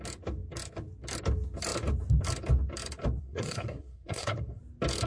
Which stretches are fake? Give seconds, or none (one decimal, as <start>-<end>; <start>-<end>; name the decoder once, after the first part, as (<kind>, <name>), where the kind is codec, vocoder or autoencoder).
3.2-4.6 (codec, SNAC)